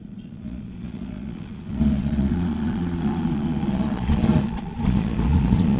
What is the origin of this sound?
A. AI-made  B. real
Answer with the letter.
A